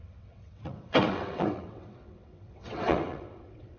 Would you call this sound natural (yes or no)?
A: no